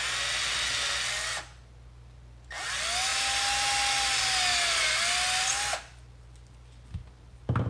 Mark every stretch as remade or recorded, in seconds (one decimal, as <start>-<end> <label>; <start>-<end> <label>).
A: 0.0-7.7 recorded